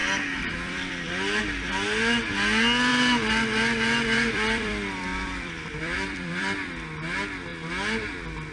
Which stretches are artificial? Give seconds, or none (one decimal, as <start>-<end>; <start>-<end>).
0.0-1.4; 2.9-6.7